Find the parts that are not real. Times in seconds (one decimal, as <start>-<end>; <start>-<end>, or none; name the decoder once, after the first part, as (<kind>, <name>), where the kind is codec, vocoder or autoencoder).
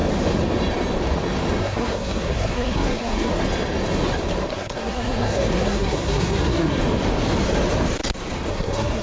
1.6-3.3 (codec, SNAC); 4.5-6.8; 8.5-9.0